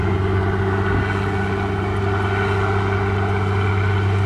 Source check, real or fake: real